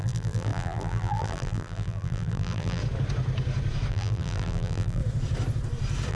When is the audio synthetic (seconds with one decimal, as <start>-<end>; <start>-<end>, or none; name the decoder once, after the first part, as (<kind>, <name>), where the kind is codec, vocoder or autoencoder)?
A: 0.0-2.8 (vocoder, BigVGAN v2); 3.9-5.0